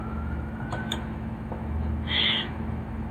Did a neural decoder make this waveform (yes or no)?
yes